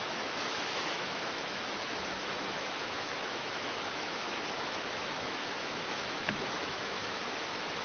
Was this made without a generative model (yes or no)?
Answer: no